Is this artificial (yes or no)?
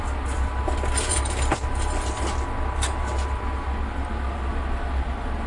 no